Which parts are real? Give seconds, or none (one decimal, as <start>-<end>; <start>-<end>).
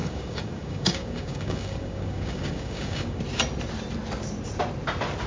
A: 3.2-5.3